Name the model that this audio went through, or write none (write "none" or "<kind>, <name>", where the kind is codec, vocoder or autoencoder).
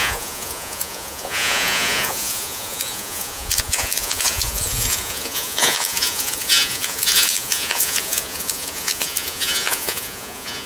vocoder, Vocos